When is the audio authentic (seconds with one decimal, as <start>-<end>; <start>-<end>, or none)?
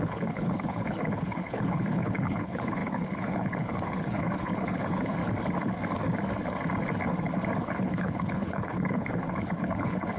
5.2-7.6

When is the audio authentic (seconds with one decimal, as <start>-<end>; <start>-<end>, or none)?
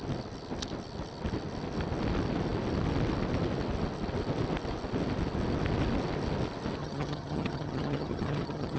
0.0-6.8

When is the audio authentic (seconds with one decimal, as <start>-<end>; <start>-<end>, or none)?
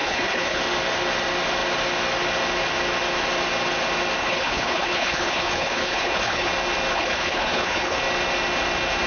0.6-4.2; 6.5-6.9; 8.0-9.1